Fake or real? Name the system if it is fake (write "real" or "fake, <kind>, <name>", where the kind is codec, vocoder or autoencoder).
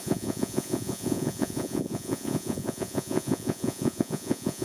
fake, vocoder, Vocos